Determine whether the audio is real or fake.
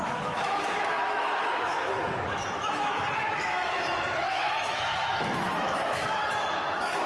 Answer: fake